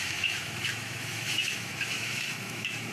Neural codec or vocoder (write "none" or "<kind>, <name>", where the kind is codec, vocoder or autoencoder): autoencoder, DAC-VAE